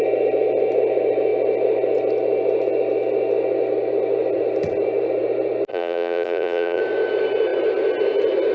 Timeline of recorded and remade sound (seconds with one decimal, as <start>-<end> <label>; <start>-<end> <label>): 0.0-5.7 recorded; 5.7-6.8 remade; 6.8-8.5 recorded